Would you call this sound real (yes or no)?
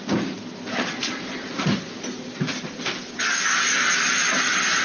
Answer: yes